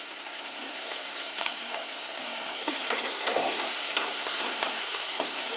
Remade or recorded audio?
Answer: remade